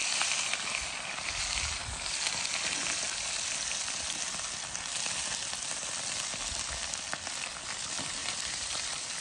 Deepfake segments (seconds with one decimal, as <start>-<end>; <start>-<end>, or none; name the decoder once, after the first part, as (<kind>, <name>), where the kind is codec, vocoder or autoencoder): 0.0-1.4 (vocoder, BigVGAN v2); 8.2-9.2